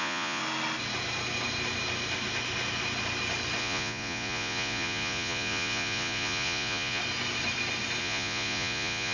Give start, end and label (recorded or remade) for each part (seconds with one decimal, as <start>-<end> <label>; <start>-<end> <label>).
0.0-0.4 remade; 0.4-3.6 recorded; 3.6-7.0 remade; 7.0-8.0 recorded; 8.0-9.1 remade